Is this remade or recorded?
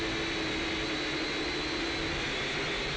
recorded